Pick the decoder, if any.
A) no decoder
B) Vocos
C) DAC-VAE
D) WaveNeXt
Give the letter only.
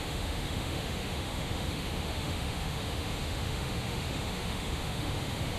C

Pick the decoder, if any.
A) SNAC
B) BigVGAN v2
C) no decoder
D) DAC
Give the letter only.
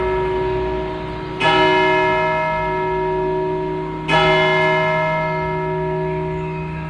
C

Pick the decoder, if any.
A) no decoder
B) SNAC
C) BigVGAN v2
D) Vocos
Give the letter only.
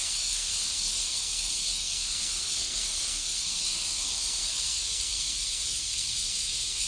B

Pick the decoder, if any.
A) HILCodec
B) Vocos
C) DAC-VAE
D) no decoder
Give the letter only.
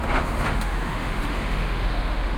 C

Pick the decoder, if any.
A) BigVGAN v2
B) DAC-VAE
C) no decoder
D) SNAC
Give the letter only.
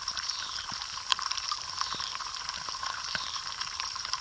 A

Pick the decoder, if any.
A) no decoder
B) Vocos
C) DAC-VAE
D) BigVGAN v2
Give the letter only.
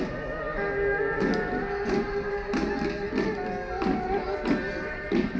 A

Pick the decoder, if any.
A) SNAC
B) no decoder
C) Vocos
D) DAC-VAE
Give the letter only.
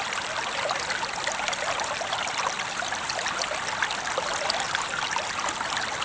B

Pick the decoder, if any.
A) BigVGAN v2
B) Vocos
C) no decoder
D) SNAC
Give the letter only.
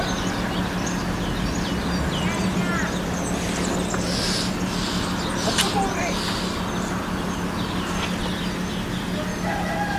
C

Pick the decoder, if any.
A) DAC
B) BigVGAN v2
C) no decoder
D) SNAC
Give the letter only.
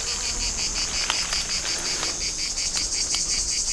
C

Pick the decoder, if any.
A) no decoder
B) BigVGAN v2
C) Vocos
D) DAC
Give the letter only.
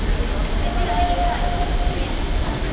A